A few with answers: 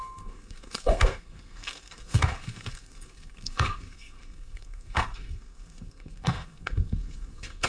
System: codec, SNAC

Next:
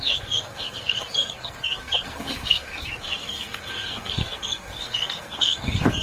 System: codec, SNAC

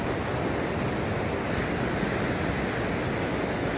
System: none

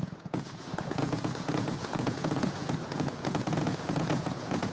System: vocoder, Vocos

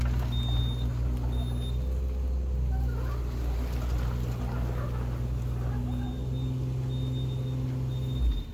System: none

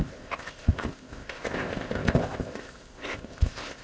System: codec, ZipCodec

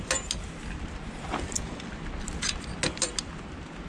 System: none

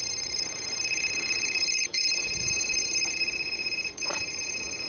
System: vocoder, Vocos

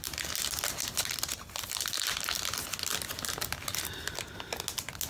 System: none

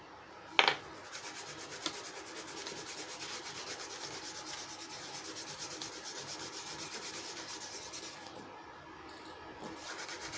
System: none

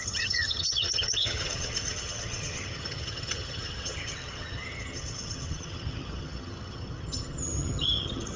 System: vocoder, HiFi-GAN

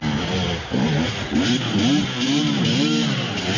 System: vocoder, BigVGAN v2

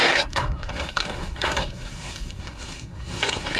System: codec, SNAC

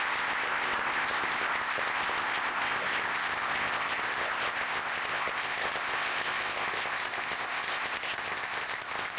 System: codec, ZipCodec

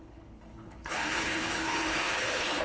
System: codec, HILCodec